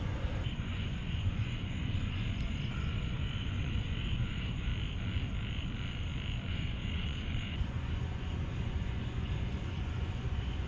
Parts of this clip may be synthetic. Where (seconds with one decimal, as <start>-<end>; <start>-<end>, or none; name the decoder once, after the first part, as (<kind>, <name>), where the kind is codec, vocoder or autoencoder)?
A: 0.0-4.7 (vocoder, Vocos); 6.5-10.7